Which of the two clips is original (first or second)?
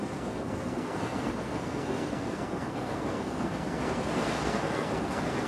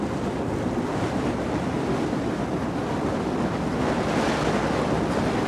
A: second